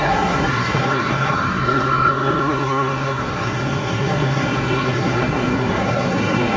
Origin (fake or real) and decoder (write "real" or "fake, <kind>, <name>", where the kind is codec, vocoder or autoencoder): fake, codec, SNAC